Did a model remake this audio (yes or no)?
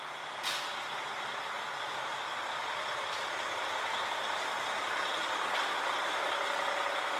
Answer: yes